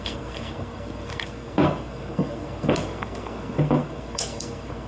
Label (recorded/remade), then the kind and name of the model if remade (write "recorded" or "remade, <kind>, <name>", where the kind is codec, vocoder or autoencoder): remade, codec, SNAC